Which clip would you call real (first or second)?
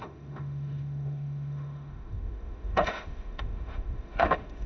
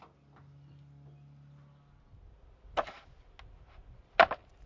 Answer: second